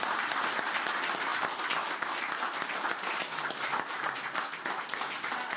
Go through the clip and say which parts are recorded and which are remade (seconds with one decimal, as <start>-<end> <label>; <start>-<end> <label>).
0.0-5.6 recorded